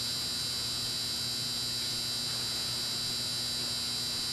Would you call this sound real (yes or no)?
yes